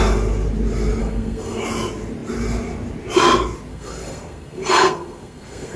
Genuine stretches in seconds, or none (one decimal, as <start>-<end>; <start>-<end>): 0.0-1.0; 1.6-3.7